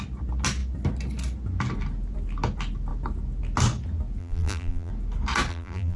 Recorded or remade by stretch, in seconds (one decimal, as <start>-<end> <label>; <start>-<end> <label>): 0.0-4.2 recorded; 4.2-4.9 remade; 4.9-5.5 recorded; 5.5-6.0 remade